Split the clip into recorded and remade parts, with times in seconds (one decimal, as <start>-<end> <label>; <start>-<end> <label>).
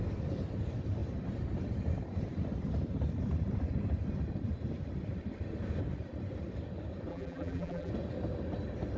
0.0-7.1 recorded; 7.1-7.9 remade; 7.9-9.0 recorded